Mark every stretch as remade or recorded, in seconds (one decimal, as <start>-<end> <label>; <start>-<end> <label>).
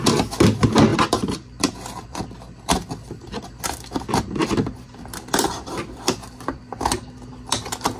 0.0-0.9 recorded; 0.9-3.4 remade; 3.4-4.4 recorded; 4.4-6.8 remade; 6.8-8.0 recorded